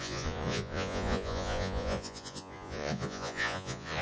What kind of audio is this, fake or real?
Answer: fake